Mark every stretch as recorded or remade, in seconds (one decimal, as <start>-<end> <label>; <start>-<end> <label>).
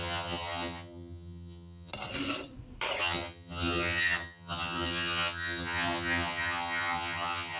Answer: 0.0-1.9 remade; 1.9-3.0 recorded; 3.0-7.6 remade